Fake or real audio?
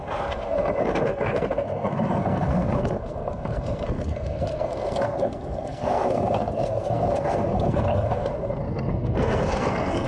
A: fake